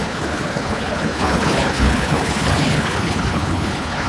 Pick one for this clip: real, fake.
fake